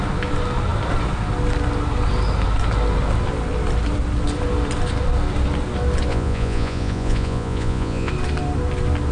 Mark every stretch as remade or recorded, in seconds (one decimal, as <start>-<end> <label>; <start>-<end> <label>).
0.0-6.1 recorded; 6.1-8.1 remade; 8.1-9.1 recorded